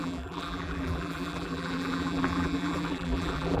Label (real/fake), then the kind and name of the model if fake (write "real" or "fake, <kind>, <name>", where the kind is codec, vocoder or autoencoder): fake, vocoder, BigVGAN v2